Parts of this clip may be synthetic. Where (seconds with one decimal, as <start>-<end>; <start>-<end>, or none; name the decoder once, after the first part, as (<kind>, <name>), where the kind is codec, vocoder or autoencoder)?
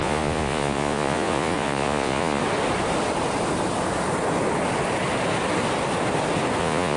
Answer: 0.0-2.4 (vocoder, Vocos); 6.6-7.0